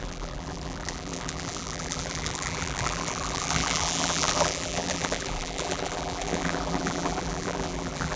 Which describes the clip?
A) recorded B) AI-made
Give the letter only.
B